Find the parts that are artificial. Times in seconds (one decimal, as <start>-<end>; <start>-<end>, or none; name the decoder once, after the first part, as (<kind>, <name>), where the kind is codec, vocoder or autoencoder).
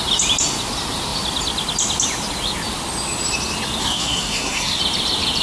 3.8-4.8 (codec, SNAC)